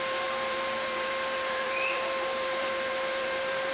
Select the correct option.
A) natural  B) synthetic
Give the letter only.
B